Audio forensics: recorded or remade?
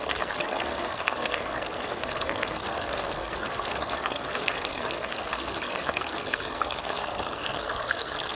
remade